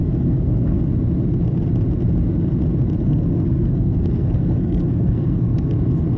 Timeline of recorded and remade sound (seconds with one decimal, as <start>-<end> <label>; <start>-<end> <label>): 0.0-0.8 remade; 0.8-3.0 recorded; 3.0-5.7 remade; 5.7-6.2 recorded